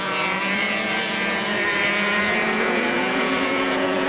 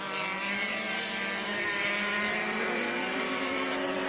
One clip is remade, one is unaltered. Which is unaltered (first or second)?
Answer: second